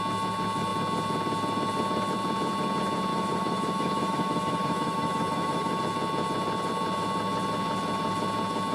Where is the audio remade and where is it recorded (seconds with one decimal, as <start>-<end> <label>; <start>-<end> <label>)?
0.0-3.1 recorded; 3.1-5.8 remade; 5.8-8.7 recorded